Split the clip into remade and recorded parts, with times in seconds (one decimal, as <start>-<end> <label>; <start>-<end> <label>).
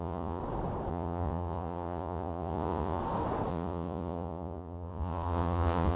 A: 0.0-0.4 remade; 0.4-0.9 recorded; 0.9-3.0 remade; 3.0-3.5 recorded; 3.5-6.0 remade